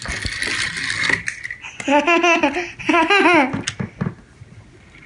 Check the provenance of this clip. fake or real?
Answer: real